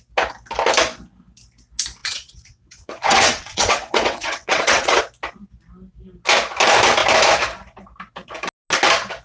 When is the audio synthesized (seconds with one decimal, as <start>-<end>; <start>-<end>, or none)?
2.0-5.0